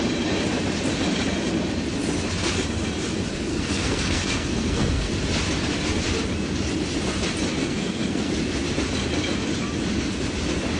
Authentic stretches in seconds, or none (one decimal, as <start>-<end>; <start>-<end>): 0.0-3.5; 5.1-7.6; 8.3-10.8

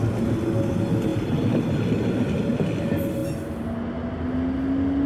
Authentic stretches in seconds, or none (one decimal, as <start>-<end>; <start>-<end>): 0.0-5.1

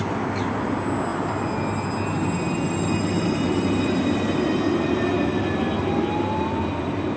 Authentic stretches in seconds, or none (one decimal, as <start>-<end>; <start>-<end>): 0.0-7.2

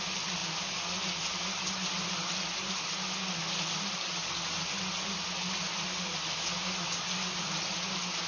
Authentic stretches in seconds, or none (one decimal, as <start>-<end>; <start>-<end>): 0.0-8.3

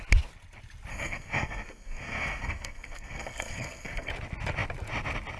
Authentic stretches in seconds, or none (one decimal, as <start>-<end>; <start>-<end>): 0.0-0.9; 4.1-5.4